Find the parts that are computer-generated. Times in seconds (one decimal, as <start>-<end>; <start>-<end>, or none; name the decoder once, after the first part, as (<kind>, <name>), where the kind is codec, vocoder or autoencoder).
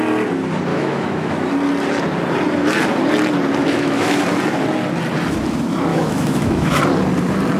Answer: 0.7-1.5 (autoencoder, DAC-VAE); 3.6-4.2; 5.9-6.8